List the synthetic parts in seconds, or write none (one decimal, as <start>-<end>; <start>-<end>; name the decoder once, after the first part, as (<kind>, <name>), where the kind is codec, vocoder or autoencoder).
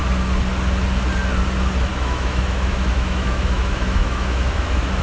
1.9-5.0 (autoencoder, DAC-VAE)